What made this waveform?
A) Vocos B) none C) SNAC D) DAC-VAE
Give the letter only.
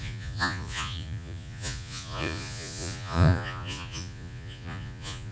A